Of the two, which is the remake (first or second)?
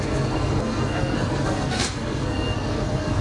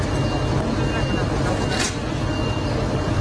first